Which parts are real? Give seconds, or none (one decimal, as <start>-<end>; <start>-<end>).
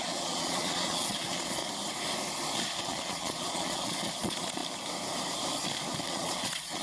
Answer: 1.6-2.8; 4.6-6.1